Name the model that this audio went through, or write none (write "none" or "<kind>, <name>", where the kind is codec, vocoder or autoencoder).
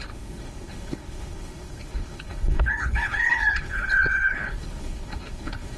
codec, HILCodec